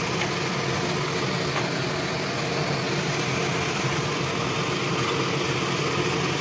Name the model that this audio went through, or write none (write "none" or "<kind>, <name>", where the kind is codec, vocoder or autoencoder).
none